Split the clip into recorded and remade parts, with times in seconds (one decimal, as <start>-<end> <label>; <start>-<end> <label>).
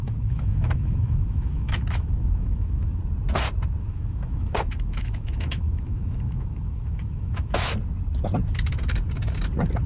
0.0-3.0 remade; 3.0-3.8 recorded; 3.8-7.7 remade; 7.7-9.9 recorded